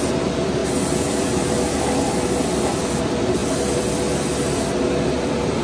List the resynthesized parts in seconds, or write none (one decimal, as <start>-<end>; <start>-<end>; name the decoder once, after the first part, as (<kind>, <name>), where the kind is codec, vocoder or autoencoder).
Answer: 0.0-5.6 (vocoder, BigVGAN v2)